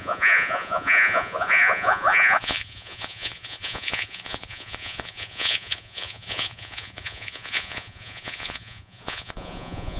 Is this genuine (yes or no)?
no